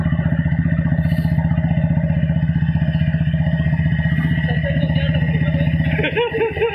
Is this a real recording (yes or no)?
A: yes